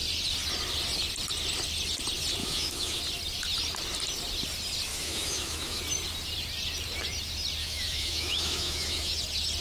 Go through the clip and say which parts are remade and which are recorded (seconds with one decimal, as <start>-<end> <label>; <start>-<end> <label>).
0.0-2.4 recorded; 2.4-3.0 remade; 3.0-4.9 recorded; 4.9-5.8 remade; 5.8-7.6 recorded; 7.6-9.1 remade; 9.1-9.6 recorded